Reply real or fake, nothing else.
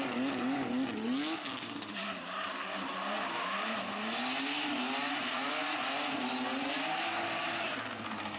real